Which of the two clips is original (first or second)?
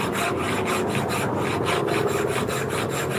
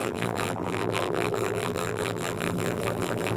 first